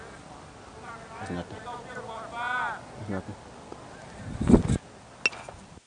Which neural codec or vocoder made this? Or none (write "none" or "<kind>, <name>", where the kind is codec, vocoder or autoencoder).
none